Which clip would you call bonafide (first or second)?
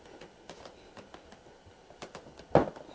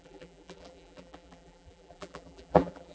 first